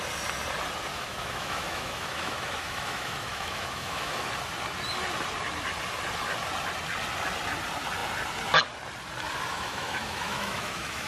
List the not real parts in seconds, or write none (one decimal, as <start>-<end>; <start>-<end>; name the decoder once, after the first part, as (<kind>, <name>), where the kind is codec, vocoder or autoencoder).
0.9-4.3 (autoencoder, DAC-VAE); 9.5-11.1